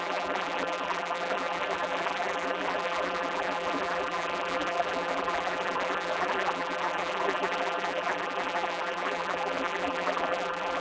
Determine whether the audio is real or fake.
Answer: fake